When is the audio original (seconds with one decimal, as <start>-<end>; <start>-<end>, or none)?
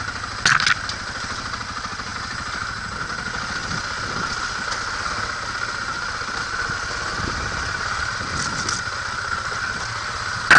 0.0-10.6